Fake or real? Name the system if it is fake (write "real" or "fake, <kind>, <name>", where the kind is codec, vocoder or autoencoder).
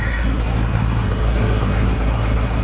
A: fake, codec, SNAC